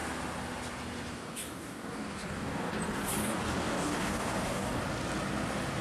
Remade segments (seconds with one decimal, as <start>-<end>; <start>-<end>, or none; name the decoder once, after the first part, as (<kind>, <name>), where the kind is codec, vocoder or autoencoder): 1.1-2.7 (codec, DAC); 3.2-4.8